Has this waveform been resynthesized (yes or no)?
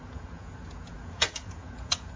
yes